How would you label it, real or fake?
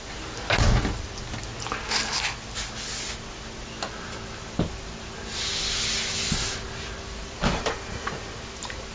real